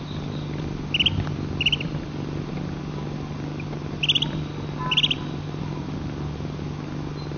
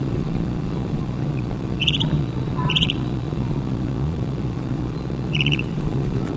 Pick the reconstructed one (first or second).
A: second